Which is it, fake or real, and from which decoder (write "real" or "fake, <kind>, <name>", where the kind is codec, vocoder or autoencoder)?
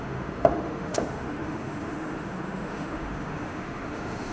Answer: fake, autoencoder, DAC-VAE